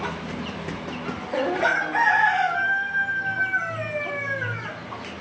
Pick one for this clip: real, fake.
real